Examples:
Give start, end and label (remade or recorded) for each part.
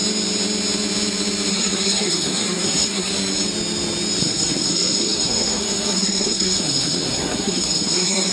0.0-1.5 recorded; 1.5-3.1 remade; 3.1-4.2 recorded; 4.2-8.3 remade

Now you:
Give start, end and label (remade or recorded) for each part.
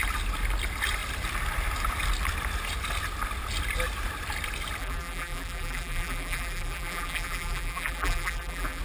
0.0-4.8 recorded; 4.8-8.8 remade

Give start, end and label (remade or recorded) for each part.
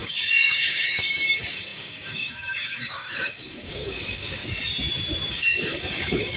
0.0-4.4 remade; 4.4-5.3 recorded; 5.3-6.4 remade